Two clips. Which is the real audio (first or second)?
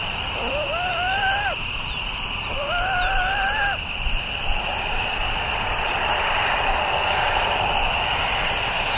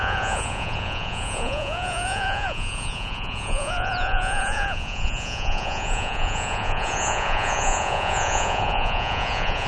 first